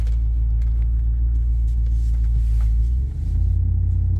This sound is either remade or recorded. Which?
recorded